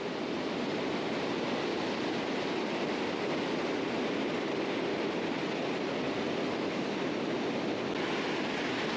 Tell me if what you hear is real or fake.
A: real